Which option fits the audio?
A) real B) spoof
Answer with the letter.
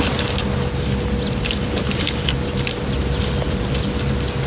A